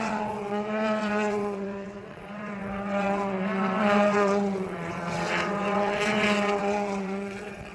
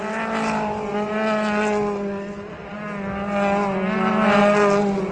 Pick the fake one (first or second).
first